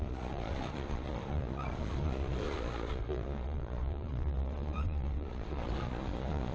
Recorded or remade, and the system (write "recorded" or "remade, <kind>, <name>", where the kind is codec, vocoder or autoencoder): remade, vocoder, Vocos